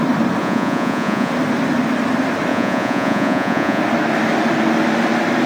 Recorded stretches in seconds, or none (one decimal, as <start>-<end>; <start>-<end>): 0.0-0.4; 1.3-2.5; 3.8-5.5